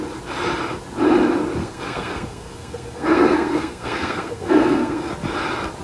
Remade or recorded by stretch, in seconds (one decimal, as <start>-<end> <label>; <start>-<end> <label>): 0.0-1.6 recorded; 1.6-5.1 remade; 5.1-5.8 recorded

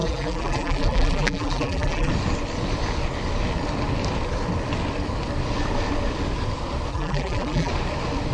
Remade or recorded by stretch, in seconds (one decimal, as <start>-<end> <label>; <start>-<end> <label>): 0.0-2.1 remade; 2.1-6.9 recorded; 6.9-7.7 remade; 7.7-8.3 recorded